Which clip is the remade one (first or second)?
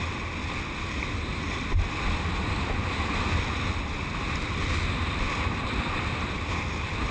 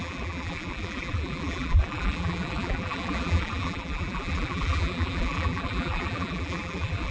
second